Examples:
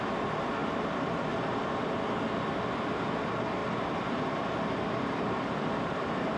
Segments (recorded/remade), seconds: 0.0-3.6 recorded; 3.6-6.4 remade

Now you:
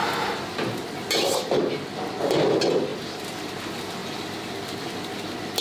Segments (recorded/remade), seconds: 0.0-2.9 recorded; 2.9-3.4 remade; 3.4-4.0 recorded; 4.0-4.9 remade; 4.9-5.6 recorded